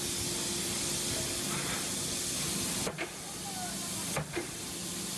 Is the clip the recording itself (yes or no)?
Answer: yes